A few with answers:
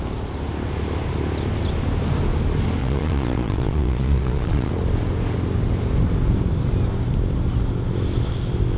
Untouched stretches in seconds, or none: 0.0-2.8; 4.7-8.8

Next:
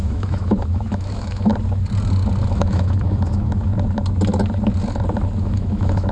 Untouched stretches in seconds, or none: 1.5-2.5; 3.7-5.4

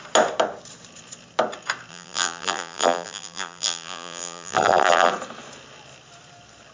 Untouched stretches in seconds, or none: 0.0-1.9; 5.1-6.7

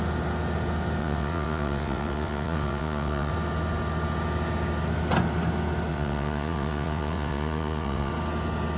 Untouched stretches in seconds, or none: 0.0-1.0; 3.3-5.9; 8.1-8.8

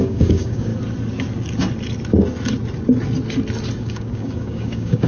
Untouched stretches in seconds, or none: 0.7-3.8